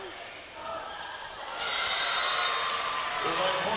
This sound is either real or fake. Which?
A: real